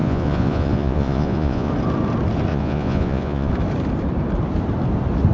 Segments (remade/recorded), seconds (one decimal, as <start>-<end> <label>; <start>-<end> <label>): 0.0-1.7 remade; 1.7-2.5 recorded; 2.5-3.5 remade; 3.5-5.3 recorded